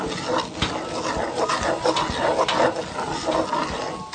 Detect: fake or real real